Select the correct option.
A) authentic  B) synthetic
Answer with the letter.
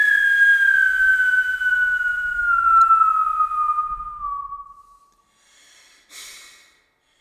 A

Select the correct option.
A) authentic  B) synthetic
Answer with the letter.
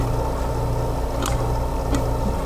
A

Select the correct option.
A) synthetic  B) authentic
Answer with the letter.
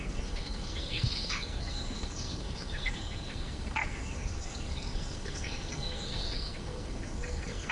A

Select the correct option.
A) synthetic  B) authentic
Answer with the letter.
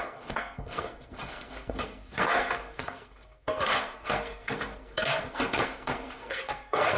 A